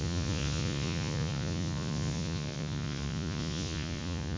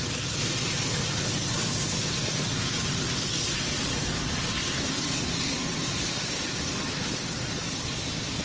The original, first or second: second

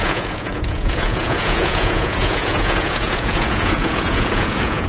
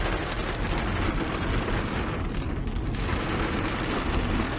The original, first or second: second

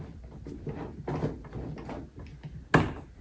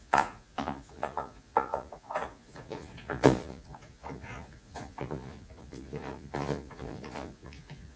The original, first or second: first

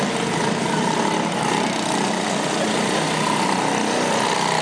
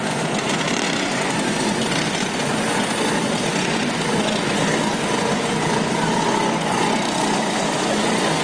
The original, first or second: first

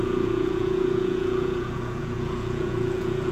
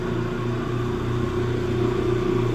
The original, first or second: second